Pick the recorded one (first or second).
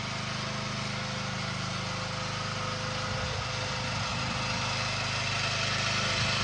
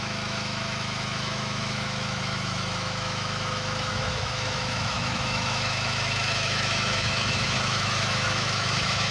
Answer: first